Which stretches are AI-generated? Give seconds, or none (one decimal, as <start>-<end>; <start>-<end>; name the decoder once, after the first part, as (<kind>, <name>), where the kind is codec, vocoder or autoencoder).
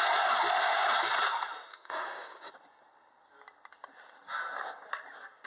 1.7-2.5 (autoencoder, DAC-VAE)